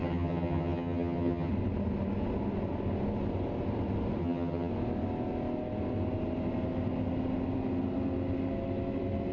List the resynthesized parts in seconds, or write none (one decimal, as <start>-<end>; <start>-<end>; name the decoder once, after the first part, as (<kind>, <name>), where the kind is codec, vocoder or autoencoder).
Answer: 0.0-1.5 (vocoder, HiFi-GAN); 4.2-4.7